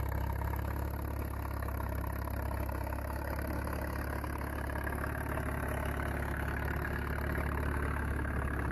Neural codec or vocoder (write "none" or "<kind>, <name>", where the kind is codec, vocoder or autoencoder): none